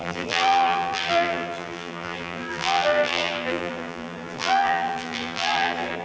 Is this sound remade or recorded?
remade